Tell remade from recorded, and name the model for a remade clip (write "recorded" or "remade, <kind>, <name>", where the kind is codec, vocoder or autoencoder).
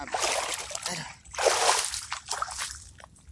recorded